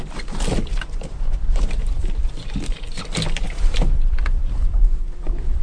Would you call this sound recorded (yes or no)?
yes